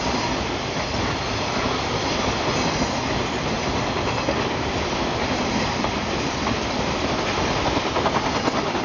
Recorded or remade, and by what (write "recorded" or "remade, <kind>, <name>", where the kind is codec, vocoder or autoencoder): remade, vocoder, BigVGAN v2